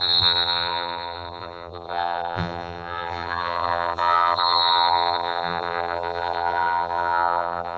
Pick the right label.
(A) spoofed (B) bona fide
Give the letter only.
A